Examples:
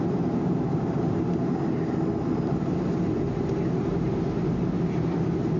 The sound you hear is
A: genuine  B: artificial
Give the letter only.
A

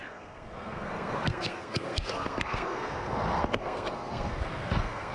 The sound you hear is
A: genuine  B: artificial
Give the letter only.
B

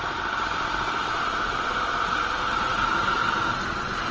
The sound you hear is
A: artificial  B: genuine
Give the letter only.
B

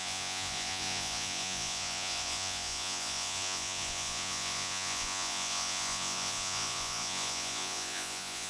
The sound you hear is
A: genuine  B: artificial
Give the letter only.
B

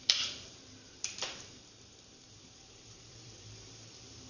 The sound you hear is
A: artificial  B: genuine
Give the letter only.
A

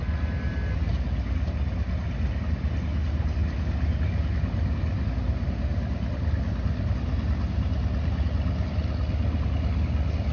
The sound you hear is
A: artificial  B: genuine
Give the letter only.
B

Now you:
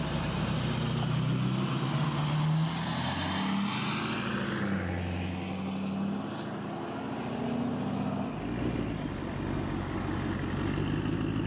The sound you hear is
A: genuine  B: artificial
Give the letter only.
A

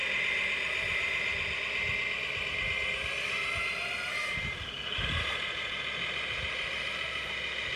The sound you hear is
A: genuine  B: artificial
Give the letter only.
A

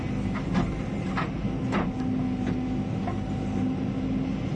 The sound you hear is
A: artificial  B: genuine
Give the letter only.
B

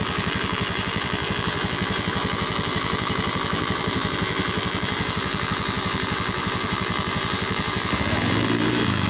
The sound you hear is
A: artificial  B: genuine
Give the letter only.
A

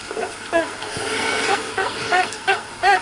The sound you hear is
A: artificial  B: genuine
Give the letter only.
A